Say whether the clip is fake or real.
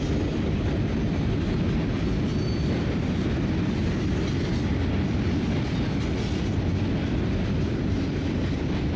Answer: real